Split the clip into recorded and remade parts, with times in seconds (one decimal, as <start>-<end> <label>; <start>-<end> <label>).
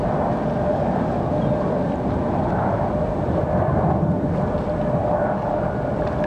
0.0-0.7 recorded; 0.7-1.3 remade; 1.3-5.0 recorded; 5.0-5.6 remade; 5.6-6.3 recorded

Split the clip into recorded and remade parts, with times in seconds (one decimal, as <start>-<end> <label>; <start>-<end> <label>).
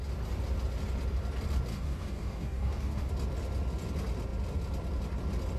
0.0-1.7 recorded; 1.7-3.1 remade; 3.1-5.6 recorded